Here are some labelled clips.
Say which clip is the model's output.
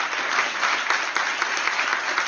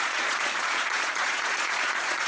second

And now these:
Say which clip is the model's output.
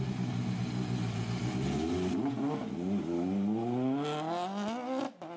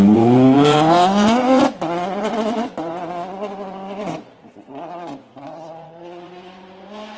second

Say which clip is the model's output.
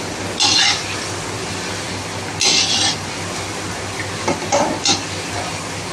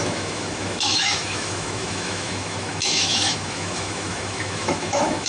second